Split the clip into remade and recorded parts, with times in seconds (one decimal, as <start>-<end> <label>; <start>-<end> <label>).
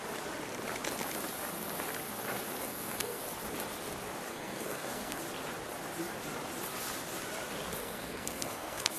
0.0-2.6 recorded; 2.6-3.2 remade; 3.2-4.3 recorded; 4.3-5.2 remade; 5.2-7.8 recorded; 7.8-9.0 remade